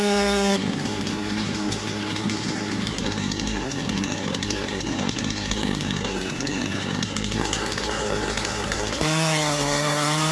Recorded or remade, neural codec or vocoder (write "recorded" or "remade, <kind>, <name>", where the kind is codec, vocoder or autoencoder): remade, codec, SNAC